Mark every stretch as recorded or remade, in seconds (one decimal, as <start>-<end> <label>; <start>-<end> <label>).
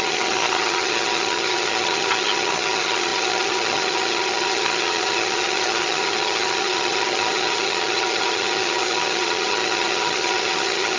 0.0-11.0 remade